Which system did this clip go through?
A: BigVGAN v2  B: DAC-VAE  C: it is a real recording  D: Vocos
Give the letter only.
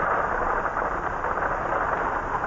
C